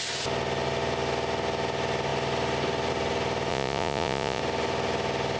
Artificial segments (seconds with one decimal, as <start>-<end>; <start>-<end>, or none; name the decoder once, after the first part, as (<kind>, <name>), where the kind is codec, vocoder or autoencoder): 3.5-4.4 (vocoder, Vocos)